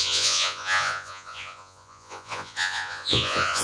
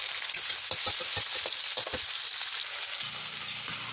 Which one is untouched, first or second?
second